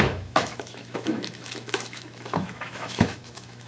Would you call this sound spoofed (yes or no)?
yes